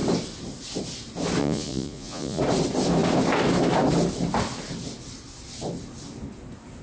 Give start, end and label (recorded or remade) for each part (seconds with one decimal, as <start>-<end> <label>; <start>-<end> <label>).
0.0-1.4 recorded; 1.4-2.4 remade; 2.4-6.8 recorded